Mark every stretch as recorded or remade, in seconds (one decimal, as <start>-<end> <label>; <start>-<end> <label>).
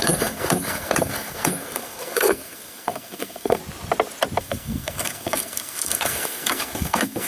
0.0-3.6 remade; 3.6-4.4 recorded; 4.4-7.3 remade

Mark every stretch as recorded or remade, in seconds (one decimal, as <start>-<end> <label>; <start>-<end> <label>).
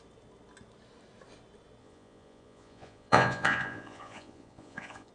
0.0-1.8 recorded; 1.8-5.1 remade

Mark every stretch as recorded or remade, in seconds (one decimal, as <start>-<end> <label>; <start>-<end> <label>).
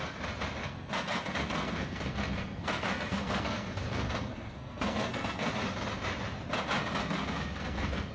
0.0-0.6 recorded; 0.6-5.5 remade; 5.5-7.0 recorded; 7.0-8.1 remade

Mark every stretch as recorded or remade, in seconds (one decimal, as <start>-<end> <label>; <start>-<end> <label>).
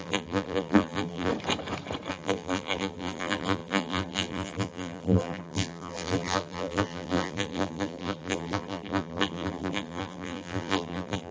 0.0-1.3 remade; 1.3-2.1 recorded; 2.1-11.3 remade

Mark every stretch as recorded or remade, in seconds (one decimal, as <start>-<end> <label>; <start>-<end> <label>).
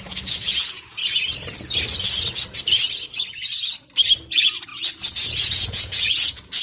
0.0-1.0 remade; 1.0-4.3 recorded; 4.3-4.7 remade; 4.7-5.5 recorded; 5.5-6.6 remade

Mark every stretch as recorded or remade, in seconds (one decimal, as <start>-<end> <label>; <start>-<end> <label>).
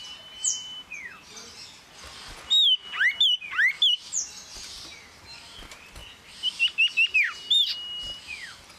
0.0-8.8 recorded